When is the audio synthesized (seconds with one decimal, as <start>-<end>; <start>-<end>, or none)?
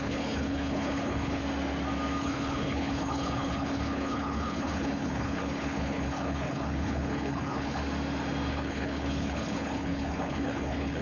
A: 0.0-1.4; 2.2-7.8; 8.5-11.0